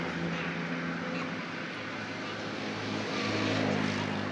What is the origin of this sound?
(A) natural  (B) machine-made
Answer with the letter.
A